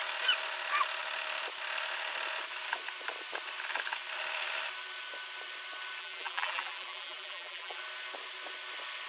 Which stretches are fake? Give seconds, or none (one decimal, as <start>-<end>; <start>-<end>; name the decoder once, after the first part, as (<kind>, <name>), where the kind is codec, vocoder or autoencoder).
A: 6.0-7.8 (vocoder, BigVGAN v2)